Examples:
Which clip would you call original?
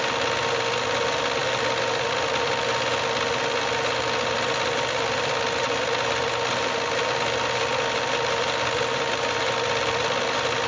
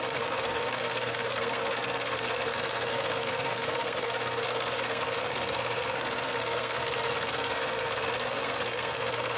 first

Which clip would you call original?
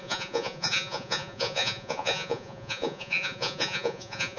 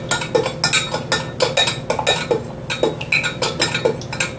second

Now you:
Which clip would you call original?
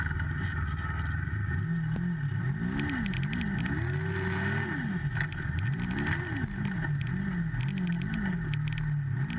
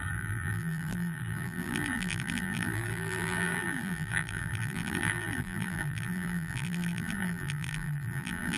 first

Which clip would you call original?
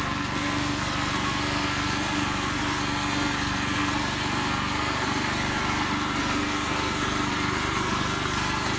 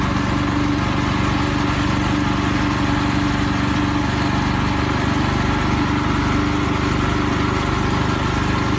second